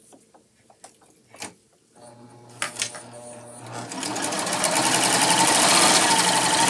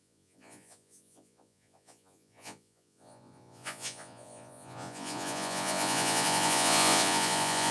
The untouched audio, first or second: first